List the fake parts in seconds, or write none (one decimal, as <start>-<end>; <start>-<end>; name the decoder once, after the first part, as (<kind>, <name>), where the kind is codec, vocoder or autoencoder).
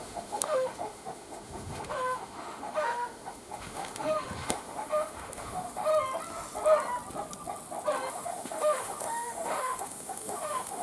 0.0-5.9 (autoencoder, DAC-VAE); 8.1-10.8